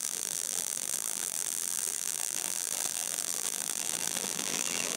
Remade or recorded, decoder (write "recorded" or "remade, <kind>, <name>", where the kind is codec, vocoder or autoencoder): remade, vocoder, BigVGAN v2